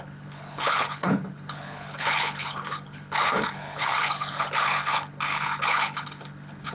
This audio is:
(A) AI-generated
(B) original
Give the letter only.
A